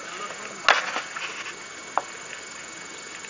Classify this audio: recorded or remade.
recorded